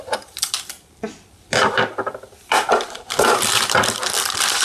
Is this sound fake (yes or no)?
yes